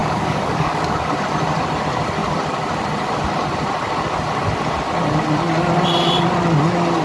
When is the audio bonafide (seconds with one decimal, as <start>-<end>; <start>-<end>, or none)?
1.1-7.0